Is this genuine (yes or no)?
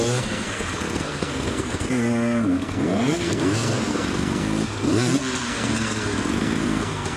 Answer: no